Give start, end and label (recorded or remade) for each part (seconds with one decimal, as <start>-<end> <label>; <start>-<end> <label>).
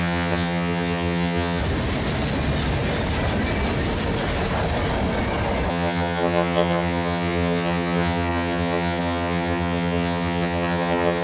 0.0-1.6 remade; 1.6-5.7 recorded; 5.7-11.2 remade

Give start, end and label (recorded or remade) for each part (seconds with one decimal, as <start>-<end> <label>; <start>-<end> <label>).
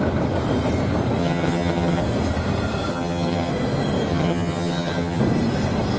0.0-1.2 recorded; 1.2-2.0 remade; 2.0-2.9 recorded; 2.9-3.5 remade; 3.5-4.1 recorded; 4.1-5.2 remade; 5.2-6.0 recorded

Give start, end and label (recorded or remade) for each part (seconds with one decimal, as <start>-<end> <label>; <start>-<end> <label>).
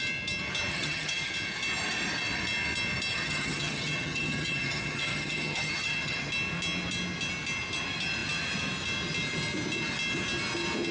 0.0-0.7 recorded; 0.7-1.3 remade; 1.3-3.1 recorded; 3.1-6.3 remade; 6.3-10.9 recorded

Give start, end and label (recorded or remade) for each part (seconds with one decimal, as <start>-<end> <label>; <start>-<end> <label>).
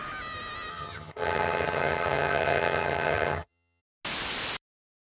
0.0-0.7 recorded; 0.7-3.8 remade; 3.8-5.2 recorded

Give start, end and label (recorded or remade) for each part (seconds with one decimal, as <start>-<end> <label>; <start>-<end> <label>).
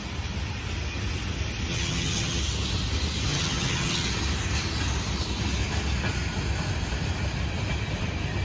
0.0-1.7 recorded; 1.7-2.4 remade; 2.4-3.3 recorded; 3.3-4.1 remade; 4.1-8.4 recorded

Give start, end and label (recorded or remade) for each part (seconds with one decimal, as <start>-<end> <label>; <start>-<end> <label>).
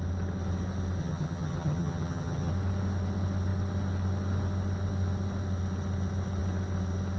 0.0-1.0 recorded; 1.0-2.5 remade; 2.5-7.2 recorded